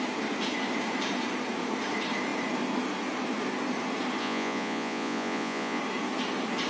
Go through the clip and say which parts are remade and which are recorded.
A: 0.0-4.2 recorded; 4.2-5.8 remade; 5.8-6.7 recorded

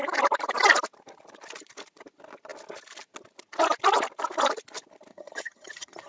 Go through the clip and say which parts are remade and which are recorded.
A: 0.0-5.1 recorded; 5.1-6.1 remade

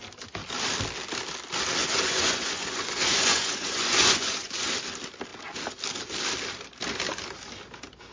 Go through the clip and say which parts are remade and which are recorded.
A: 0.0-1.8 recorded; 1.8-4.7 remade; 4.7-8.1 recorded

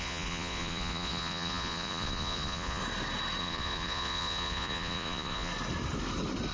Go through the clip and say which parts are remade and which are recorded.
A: 0.0-2.8 remade; 2.8-3.4 recorded; 3.4-5.5 remade; 5.5-6.5 recorded

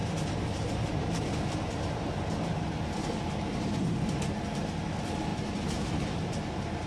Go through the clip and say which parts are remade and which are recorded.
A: 0.0-4.1 remade; 4.1-5.3 recorded; 5.3-6.9 remade

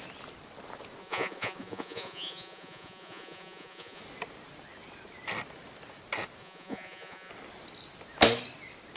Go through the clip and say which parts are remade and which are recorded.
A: 0.0-1.0 recorded; 1.0-4.0 remade; 4.0-6.4 recorded; 6.4-7.3 remade; 7.3-9.0 recorded